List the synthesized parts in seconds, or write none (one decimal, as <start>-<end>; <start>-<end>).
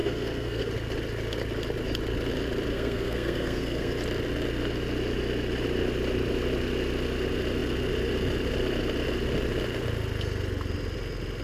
0.0-0.7; 2.7-3.9